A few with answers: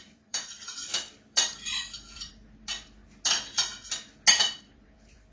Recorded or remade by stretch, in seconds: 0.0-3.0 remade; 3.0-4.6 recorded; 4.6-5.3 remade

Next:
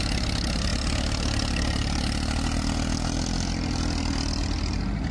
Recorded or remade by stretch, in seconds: 0.0-5.1 recorded

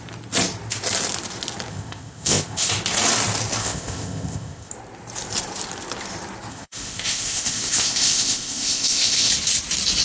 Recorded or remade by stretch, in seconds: 0.0-1.7 recorded; 1.7-2.7 remade; 2.7-3.6 recorded; 3.6-4.7 remade; 4.7-6.5 recorded; 6.5-9.3 remade; 9.3-10.0 recorded

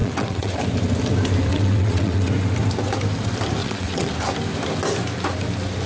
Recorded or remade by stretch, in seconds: 0.0-0.6 remade; 0.6-1.5 recorded; 1.5-2.3 remade; 2.3-3.6 recorded; 3.6-4.1 remade; 4.1-5.9 recorded

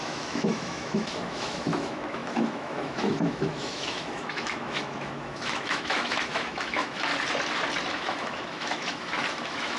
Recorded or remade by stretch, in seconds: 0.0-7.1 remade; 7.1-7.9 recorded; 7.9-9.8 remade

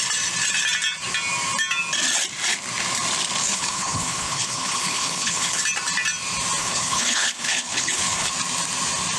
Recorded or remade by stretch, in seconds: 0.0-3.4 recorded; 3.4-5.6 remade; 5.6-6.6 recorded; 6.6-8.3 remade; 8.3-9.2 recorded

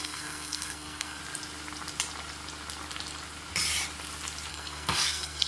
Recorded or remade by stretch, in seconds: 0.0-1.2 remade; 1.2-4.5 recorded; 4.5-5.5 remade

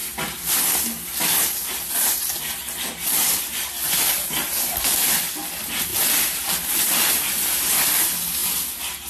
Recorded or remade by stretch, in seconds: 0.0-9.1 recorded